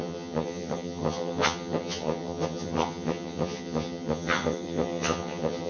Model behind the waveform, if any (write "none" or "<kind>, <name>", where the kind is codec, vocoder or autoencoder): vocoder, HiFi-GAN